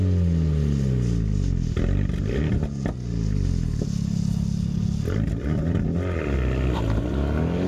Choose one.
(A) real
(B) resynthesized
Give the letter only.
A